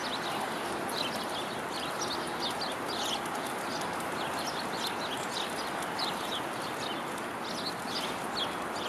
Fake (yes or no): no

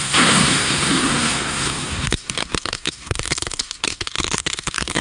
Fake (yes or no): yes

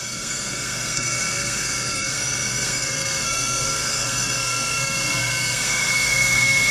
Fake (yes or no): yes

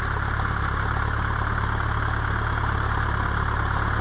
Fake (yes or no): no